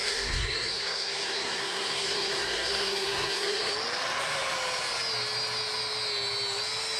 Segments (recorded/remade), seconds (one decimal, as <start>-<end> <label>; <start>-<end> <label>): 0.0-3.7 remade; 3.7-7.0 recorded